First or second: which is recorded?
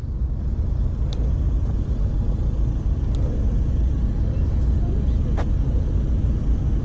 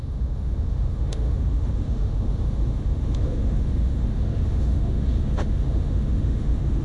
first